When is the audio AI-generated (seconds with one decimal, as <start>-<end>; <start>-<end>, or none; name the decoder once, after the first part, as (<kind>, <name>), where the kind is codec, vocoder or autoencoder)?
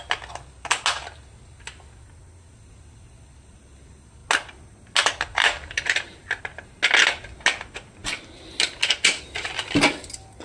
none